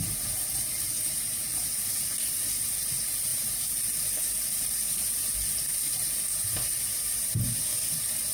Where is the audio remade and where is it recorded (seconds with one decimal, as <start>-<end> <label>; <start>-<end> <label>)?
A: 0.0-8.3 remade